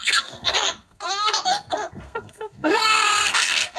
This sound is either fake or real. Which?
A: fake